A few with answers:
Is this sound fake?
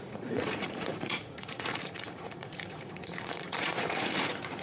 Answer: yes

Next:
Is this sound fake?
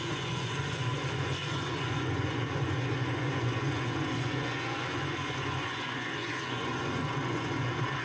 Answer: yes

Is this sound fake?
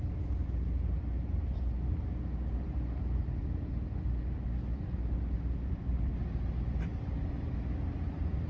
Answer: no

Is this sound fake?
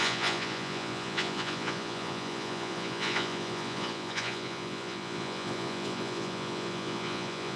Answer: yes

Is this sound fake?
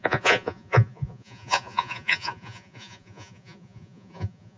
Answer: yes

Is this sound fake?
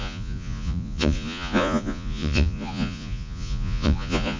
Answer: yes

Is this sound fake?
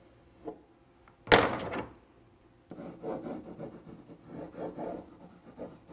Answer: no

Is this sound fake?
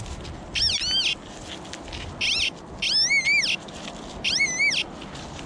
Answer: no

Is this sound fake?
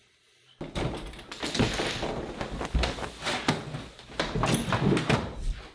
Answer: no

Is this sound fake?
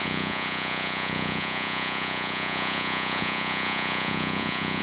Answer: yes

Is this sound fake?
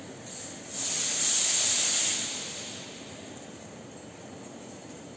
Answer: no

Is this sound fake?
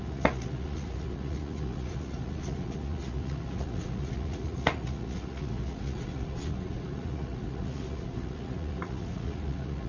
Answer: yes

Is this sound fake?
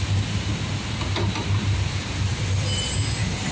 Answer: no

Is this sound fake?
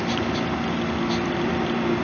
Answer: no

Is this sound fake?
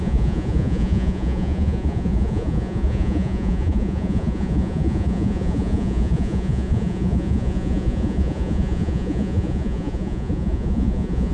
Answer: yes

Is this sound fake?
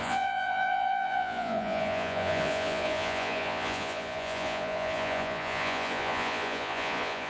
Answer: yes